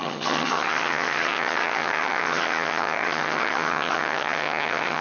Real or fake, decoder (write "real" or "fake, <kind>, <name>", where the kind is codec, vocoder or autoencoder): fake, vocoder, HiFi-GAN